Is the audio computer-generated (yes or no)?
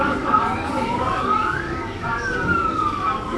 yes